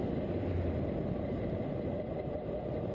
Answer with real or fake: real